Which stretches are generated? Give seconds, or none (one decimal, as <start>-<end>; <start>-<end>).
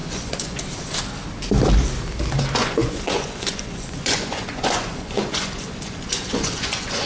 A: 0.0-0.6; 2.6-7.1